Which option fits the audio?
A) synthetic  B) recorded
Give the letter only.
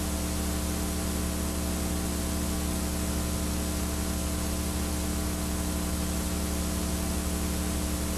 B